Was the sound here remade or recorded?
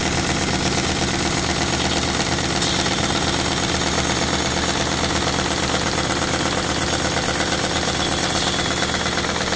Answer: recorded